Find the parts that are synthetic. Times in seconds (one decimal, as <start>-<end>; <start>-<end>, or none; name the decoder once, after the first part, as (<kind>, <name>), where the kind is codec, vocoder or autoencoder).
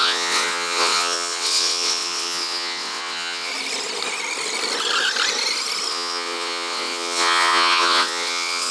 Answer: 0.0-3.5 (vocoder, WaveNeXt); 5.9-8.7